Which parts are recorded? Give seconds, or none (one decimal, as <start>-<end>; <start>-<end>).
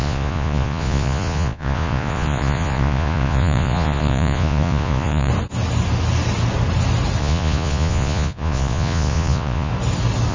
5.3-7.2; 9.7-10.3